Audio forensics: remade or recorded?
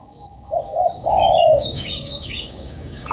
remade